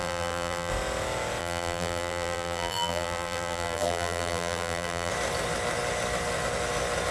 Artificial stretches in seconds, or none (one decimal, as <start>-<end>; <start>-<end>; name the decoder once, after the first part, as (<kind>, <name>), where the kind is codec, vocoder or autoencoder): 0.0-0.7 (vocoder, BigVGAN v2); 1.4-5.1